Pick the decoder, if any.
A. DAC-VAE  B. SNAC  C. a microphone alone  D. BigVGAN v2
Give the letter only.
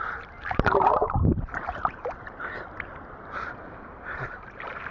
D